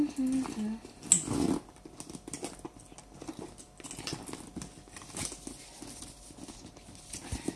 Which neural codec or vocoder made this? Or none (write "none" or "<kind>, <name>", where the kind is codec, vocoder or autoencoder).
none